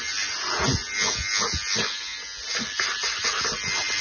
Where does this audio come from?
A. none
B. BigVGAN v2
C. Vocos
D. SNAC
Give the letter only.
A